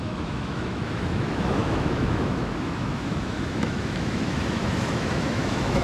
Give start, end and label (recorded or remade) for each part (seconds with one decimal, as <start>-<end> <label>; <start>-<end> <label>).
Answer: 0.0-5.8 remade